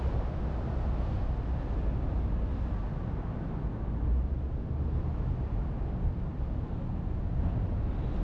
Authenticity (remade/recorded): recorded